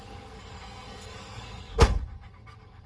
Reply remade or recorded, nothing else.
remade